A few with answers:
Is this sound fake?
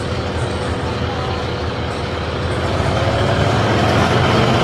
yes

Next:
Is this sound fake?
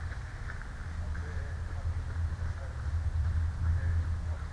no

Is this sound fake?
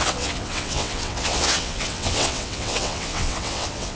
yes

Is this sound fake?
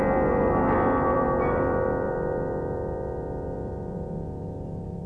yes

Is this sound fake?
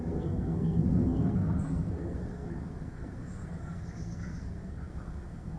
yes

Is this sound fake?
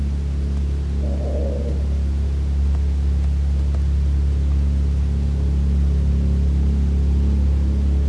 no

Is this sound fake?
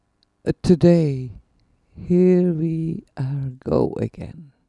no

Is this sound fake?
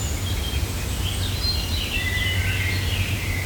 no